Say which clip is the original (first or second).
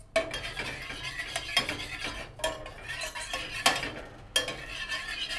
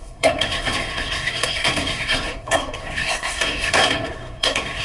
first